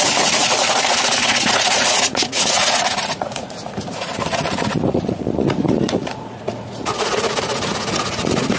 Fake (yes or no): yes